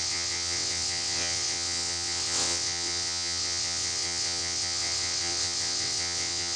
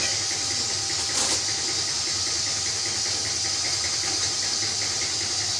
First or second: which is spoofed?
first